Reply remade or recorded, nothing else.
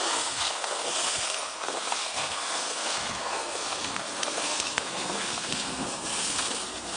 remade